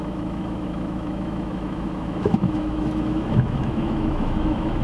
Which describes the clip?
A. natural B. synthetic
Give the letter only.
B